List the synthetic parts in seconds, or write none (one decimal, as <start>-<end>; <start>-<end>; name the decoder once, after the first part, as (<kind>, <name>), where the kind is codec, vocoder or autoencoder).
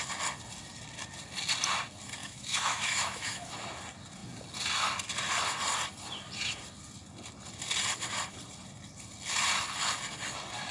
2.2-3.5 (autoencoder, DAC-VAE)